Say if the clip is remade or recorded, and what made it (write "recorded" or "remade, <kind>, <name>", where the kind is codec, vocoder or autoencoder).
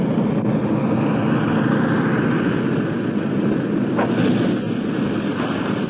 recorded